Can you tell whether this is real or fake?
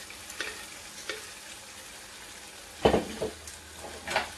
real